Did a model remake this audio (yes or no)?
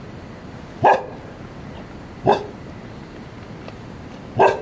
no